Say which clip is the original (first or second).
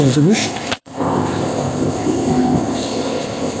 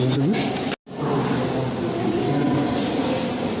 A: second